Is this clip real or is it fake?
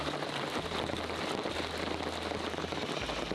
real